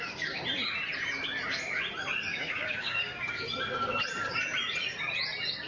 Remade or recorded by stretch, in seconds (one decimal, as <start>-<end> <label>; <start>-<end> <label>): 0.0-2.3 recorded; 2.3-3.3 remade; 3.3-5.7 recorded